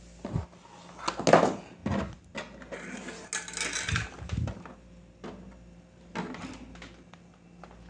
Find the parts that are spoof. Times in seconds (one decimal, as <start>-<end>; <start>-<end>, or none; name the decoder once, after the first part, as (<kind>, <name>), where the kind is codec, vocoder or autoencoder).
none